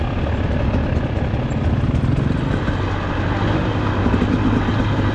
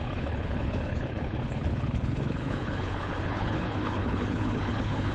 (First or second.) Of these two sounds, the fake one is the second